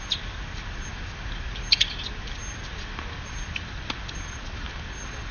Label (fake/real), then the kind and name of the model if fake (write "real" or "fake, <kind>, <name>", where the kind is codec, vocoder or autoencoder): real